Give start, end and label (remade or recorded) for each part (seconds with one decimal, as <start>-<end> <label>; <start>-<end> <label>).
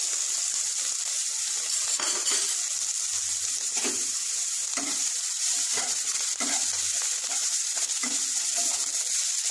0.0-1.2 recorded; 1.2-2.4 remade; 2.4-3.3 recorded; 3.3-8.5 remade; 8.5-9.5 recorded